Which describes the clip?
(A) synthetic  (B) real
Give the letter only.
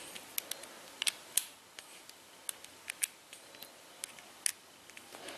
B